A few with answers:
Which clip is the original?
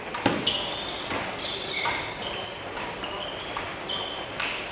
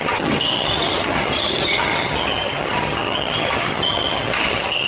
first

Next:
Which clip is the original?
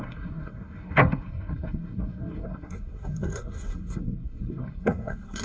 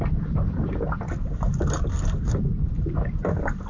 second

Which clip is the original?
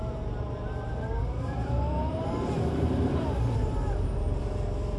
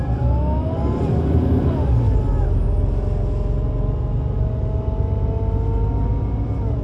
second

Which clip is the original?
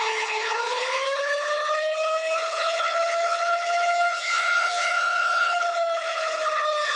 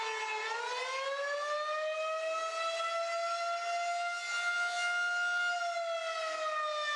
second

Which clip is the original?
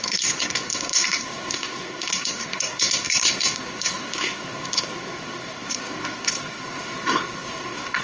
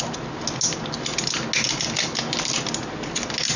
second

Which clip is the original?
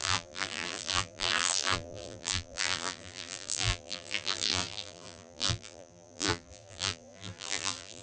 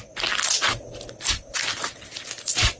second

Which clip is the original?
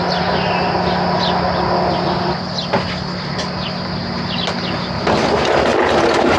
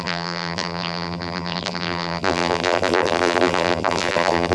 first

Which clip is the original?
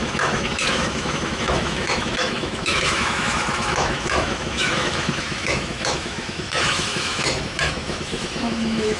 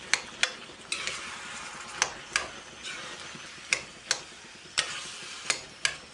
second